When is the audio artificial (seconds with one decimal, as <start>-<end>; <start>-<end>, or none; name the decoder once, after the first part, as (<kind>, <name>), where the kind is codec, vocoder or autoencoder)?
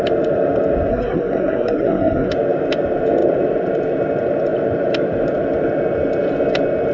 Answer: 0.9-2.3 (codec, SNAC)